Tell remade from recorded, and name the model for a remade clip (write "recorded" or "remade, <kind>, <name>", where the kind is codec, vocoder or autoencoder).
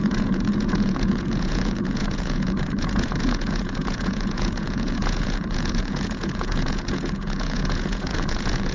remade, vocoder, Vocos